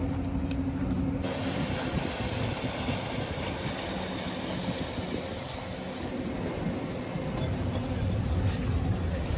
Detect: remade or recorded recorded